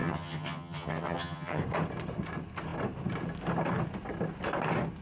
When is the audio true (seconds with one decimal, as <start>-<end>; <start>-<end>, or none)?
1.6-5.0